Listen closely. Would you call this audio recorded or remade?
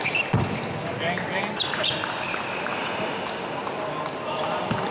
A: recorded